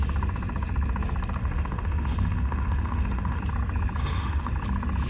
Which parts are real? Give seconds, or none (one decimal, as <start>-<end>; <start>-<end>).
0.0-1.4; 3.4-4.0; 4.5-5.1